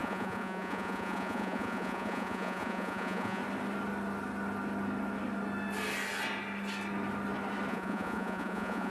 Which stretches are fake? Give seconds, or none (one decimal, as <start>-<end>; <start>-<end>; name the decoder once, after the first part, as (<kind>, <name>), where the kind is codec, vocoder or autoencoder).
0.0-3.4 (vocoder, Vocos); 7.7-8.9